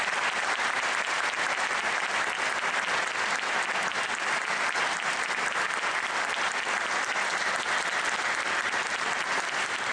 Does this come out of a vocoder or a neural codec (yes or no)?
no